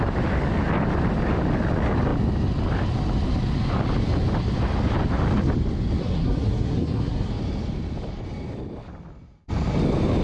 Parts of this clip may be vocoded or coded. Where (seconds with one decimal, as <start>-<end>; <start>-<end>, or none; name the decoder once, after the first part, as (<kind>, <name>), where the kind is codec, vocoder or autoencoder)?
6.0-7.3 (codec, SNAC)